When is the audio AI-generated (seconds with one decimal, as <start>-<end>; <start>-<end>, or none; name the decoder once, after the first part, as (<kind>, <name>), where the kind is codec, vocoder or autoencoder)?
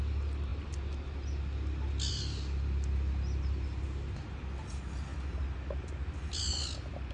none